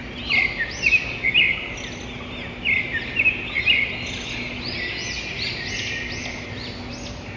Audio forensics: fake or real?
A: real